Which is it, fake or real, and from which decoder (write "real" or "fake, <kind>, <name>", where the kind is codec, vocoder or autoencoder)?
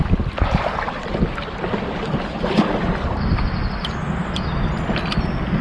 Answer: real